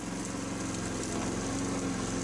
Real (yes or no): yes